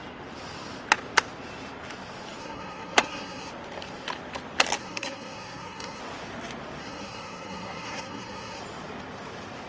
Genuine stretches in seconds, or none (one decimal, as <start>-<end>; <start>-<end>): 0.0-2.4; 3.5-4.8; 6.0-6.8; 8.6-9.7